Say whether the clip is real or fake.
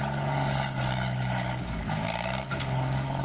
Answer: fake